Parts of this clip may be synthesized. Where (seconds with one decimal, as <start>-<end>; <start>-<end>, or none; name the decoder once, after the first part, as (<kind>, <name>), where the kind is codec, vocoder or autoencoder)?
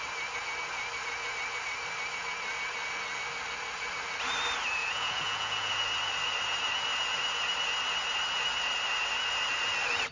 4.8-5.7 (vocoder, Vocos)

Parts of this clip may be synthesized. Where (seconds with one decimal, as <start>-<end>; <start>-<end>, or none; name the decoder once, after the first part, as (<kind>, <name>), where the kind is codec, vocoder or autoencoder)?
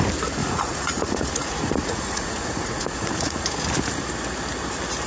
0.4-3.5 (vocoder, Vocos)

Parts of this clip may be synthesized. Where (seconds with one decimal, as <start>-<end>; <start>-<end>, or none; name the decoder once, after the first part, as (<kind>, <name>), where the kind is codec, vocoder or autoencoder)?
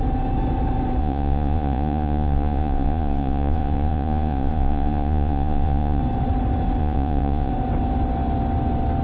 1.0-6.0 (vocoder, Vocos); 6.8-7.5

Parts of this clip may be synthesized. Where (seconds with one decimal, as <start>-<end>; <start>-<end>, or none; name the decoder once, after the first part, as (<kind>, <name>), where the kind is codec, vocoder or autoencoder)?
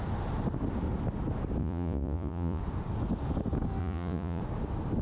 1.6-2.6 (vocoder, Vocos); 3.8-4.4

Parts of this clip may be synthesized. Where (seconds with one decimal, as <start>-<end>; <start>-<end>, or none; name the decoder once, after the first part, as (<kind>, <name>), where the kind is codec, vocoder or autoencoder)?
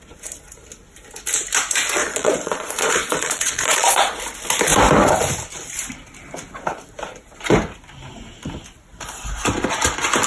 2.0-4.2 (vocoder, Vocos)